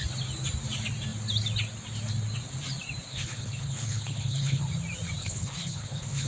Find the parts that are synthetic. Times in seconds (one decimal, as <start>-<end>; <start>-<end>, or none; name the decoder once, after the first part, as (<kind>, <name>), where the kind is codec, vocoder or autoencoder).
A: 3.1-4.6 (codec, HILCodec); 5.2-6.3